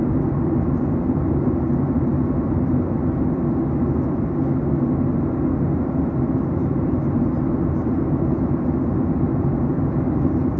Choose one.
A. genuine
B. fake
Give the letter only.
A